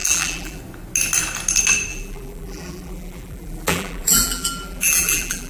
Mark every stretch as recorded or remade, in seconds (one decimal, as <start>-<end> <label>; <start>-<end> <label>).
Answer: 0.0-0.6 remade; 0.6-1.9 recorded; 1.9-5.5 remade